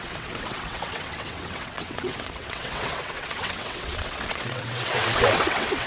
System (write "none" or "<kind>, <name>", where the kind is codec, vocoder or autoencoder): vocoder, WaveNeXt